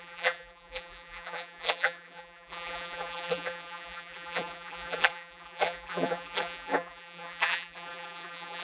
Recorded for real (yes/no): no